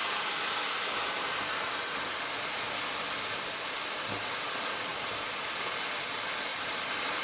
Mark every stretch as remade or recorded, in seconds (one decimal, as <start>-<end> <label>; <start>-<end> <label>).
0.0-4.9 recorded; 4.9-5.5 remade; 5.5-6.5 recorded; 6.5-7.2 remade

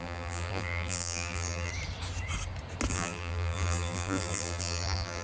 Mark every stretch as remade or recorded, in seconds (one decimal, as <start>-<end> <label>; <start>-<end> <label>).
0.0-1.7 remade; 1.7-2.9 recorded; 2.9-5.2 remade

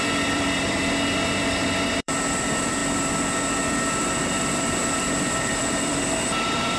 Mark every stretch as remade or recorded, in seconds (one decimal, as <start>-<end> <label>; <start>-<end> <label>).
0.0-2.8 remade; 2.8-3.6 recorded; 3.6-6.8 remade

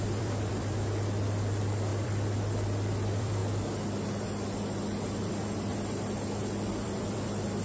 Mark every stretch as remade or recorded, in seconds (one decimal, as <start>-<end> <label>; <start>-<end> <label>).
0.0-3.4 remade; 3.4-5.3 recorded; 5.3-5.7 remade; 5.7-6.7 recorded; 6.7-7.6 remade

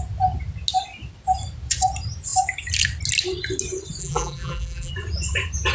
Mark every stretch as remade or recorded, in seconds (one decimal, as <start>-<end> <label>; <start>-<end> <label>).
0.0-4.0 recorded; 4.0-4.9 remade; 4.9-5.7 recorded